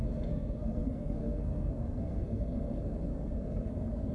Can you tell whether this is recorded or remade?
remade